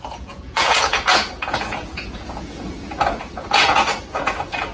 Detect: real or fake fake